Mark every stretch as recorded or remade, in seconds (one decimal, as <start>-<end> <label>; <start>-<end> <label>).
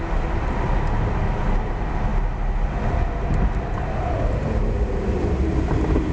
0.0-6.1 recorded